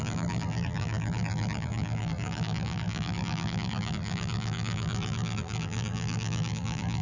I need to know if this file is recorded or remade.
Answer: remade